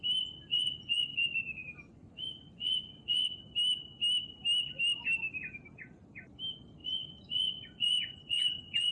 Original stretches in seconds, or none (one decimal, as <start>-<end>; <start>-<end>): 0.0-0.5; 3.4-6.8